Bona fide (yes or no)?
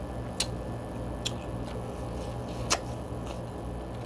yes